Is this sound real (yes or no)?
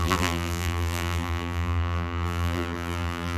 no